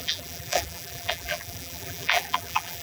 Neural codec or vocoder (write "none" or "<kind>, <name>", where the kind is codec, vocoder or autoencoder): vocoder, BigVGAN v2